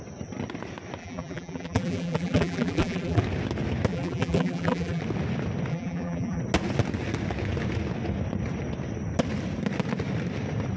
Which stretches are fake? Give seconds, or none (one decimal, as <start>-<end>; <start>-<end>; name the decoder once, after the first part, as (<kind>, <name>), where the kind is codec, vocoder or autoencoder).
1.0-3.2 (vocoder, BigVGAN v2); 3.9-5.0; 5.7-6.4